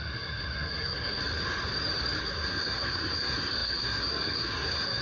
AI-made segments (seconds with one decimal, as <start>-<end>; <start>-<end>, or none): 0.0-1.2; 2.2-5.0